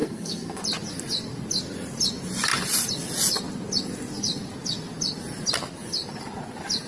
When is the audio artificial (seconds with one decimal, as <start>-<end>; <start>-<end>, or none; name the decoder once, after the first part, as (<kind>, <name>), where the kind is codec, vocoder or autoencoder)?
0.0-0.6 (codec, SNAC)